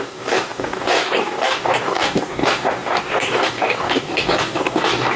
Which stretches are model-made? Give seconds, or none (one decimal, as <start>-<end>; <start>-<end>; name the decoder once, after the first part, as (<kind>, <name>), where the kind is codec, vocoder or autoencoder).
0.0-5.2 (codec, DAC)